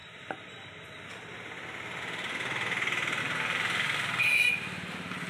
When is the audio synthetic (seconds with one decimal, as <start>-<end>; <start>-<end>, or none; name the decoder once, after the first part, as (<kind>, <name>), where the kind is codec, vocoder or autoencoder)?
none